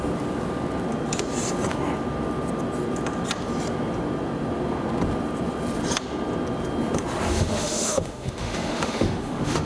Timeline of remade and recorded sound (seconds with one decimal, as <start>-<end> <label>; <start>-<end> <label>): 0.0-7.3 recorded; 7.3-9.7 remade